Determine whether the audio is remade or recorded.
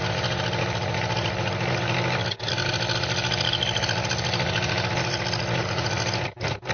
recorded